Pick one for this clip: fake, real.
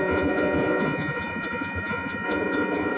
fake